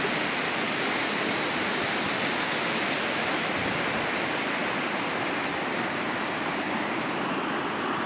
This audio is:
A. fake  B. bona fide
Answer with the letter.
B